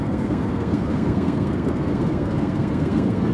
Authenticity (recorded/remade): remade